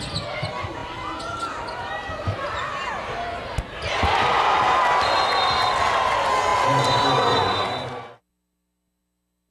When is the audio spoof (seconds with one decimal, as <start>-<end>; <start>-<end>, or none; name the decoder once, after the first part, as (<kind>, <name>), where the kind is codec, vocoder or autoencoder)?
none